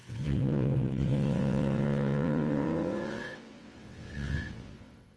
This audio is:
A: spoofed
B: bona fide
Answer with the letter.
A